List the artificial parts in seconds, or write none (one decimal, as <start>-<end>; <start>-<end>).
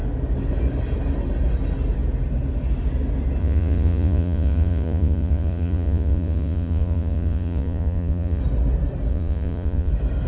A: 3.4-8.4; 9.1-9.9